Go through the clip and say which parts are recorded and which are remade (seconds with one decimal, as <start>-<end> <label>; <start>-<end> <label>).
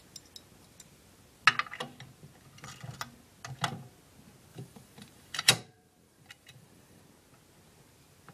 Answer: 0.0-4.5 recorded; 4.5-7.0 remade; 7.0-8.3 recorded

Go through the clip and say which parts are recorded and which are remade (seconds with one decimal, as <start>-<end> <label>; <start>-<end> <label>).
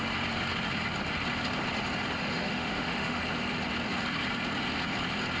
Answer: 0.0-2.2 recorded; 2.2-3.2 remade; 3.2-5.4 recorded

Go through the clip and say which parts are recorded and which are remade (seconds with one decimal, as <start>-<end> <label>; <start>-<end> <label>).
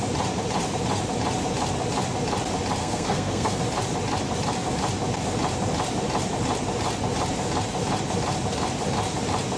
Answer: 0.0-2.8 recorded; 2.8-3.6 remade; 3.6-9.6 recorded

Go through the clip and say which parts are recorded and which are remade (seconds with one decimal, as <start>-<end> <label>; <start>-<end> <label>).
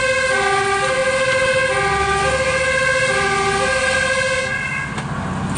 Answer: 0.0-5.6 recorded